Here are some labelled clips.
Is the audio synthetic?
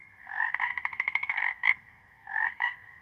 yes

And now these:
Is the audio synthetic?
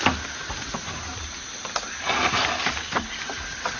no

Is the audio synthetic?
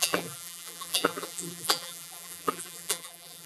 yes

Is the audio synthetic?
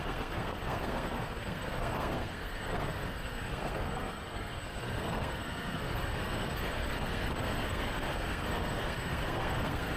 yes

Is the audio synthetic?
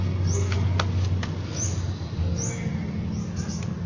no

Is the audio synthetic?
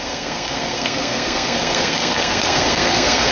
yes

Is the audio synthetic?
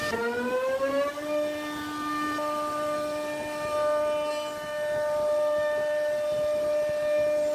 no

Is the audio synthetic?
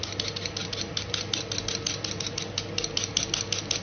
no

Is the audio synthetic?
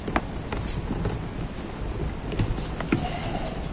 no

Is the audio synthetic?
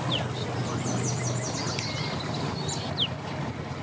no